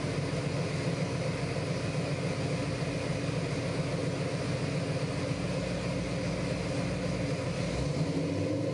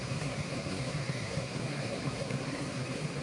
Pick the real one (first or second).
first